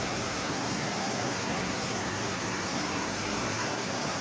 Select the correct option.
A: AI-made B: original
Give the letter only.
A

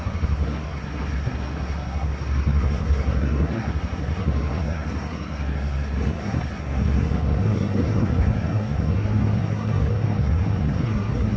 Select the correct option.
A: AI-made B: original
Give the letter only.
A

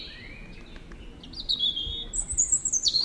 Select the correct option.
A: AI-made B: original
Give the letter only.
B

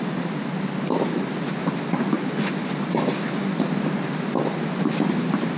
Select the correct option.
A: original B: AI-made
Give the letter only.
A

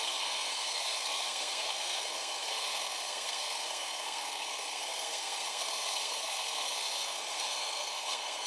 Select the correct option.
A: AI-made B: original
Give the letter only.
A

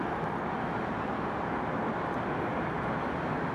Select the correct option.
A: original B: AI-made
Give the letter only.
A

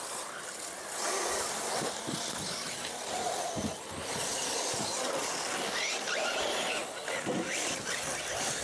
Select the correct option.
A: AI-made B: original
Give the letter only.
B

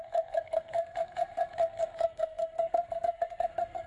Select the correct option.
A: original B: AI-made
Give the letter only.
B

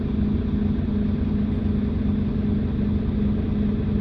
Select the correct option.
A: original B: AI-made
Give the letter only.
A